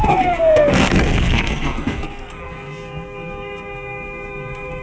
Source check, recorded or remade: remade